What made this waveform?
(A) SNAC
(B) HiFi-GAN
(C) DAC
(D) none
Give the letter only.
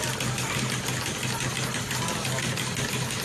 D